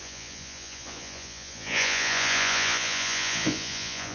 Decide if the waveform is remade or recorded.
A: remade